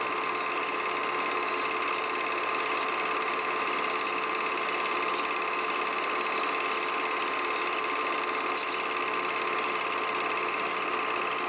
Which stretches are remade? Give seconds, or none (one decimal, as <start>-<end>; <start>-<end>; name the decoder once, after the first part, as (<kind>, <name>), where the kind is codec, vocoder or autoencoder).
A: none